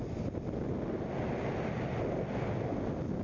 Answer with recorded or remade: recorded